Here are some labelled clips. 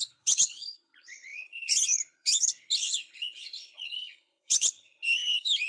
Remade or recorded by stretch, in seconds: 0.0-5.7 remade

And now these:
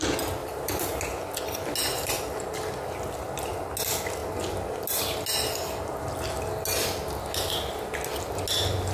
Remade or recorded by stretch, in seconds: 0.0-0.4 recorded; 0.4-1.0 remade; 1.0-8.9 recorded

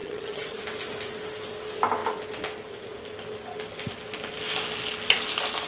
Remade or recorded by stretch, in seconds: 0.0-0.6 remade; 0.6-5.7 recorded